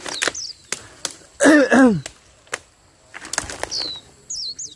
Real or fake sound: real